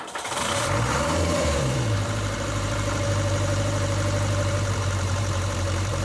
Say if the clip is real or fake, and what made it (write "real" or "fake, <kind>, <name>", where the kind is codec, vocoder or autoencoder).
fake, vocoder, BigVGAN v2